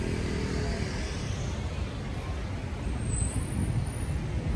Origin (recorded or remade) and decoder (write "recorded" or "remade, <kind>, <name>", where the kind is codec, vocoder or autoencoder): recorded